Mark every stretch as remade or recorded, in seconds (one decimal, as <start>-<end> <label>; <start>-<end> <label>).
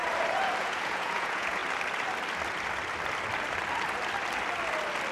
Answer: 0.0-0.6 recorded; 0.6-1.6 remade; 1.6-5.1 recorded